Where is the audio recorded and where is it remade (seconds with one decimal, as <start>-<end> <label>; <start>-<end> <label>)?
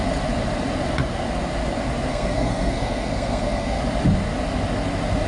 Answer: 0.0-2.1 recorded; 2.1-3.8 remade; 3.8-5.3 recorded